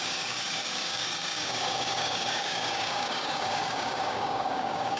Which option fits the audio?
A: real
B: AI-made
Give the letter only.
B